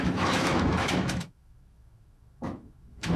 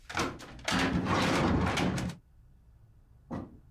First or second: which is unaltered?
second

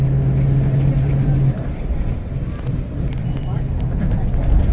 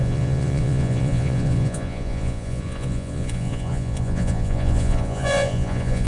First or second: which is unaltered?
first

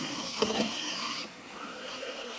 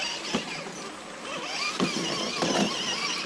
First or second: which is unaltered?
second